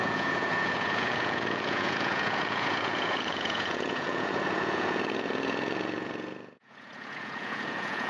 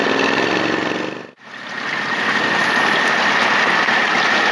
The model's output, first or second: first